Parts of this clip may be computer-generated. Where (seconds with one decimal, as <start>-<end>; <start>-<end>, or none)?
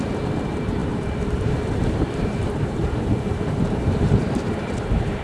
0.0-5.2